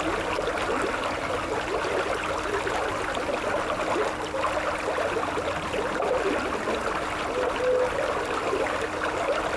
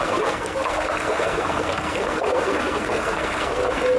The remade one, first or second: second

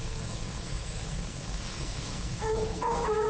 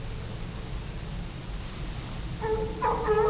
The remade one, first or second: first